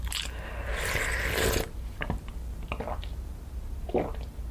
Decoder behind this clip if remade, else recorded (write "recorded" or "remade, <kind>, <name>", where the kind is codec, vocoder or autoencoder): recorded